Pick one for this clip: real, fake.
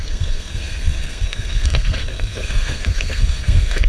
fake